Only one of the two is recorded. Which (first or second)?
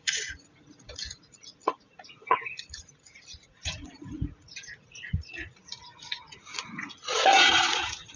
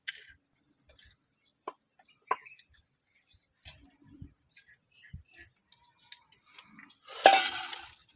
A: second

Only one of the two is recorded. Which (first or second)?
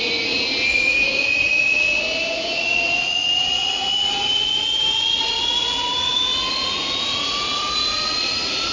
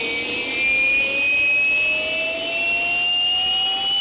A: second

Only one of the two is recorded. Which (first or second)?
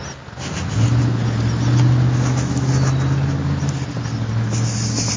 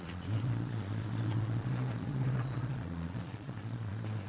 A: first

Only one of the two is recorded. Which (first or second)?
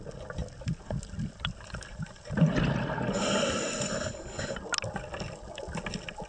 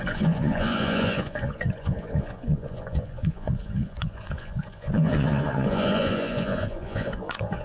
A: first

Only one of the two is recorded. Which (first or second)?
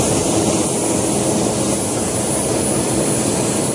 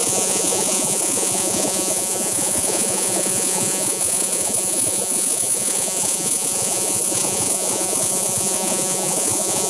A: first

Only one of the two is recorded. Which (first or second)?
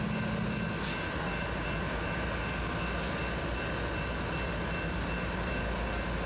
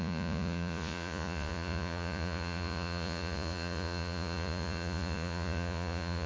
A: first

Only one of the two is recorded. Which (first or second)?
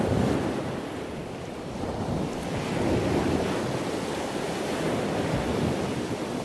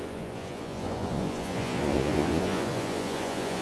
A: first